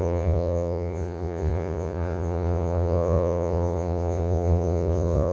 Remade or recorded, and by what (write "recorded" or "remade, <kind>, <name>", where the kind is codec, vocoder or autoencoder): remade, vocoder, Vocos